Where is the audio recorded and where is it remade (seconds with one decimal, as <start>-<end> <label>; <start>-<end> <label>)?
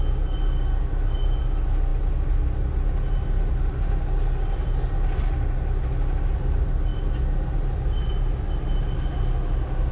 0.0-9.9 recorded